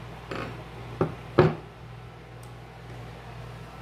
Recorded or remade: recorded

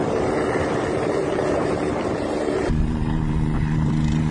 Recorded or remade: remade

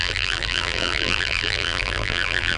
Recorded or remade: remade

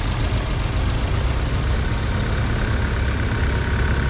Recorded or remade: recorded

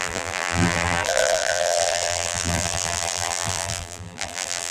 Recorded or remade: remade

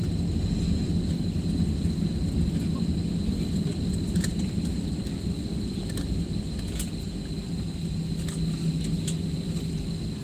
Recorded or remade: recorded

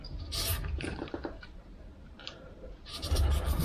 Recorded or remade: remade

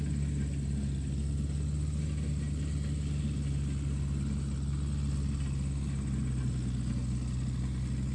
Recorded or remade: recorded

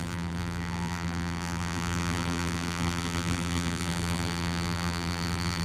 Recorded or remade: remade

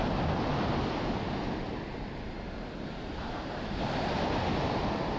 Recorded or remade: recorded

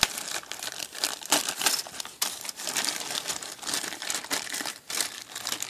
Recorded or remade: remade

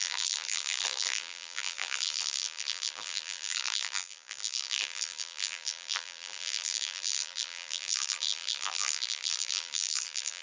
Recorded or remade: remade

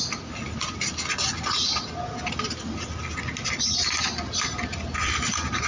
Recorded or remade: recorded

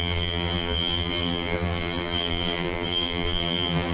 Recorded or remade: remade